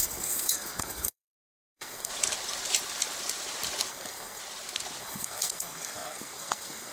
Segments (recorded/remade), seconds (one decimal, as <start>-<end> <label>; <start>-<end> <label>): 0.0-2.1 remade; 2.1-3.9 recorded; 3.9-4.4 remade; 4.4-5.0 recorded; 5.0-6.9 remade